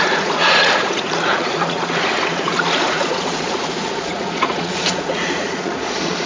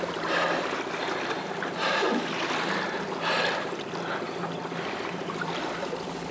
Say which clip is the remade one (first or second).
first